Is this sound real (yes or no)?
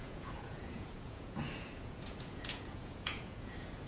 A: no